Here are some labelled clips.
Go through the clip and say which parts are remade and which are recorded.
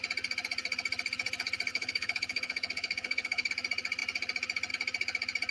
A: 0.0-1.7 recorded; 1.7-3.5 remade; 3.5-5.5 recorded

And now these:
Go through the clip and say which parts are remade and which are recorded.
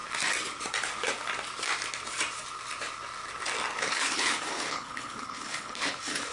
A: 0.0-3.8 recorded; 3.8-6.3 remade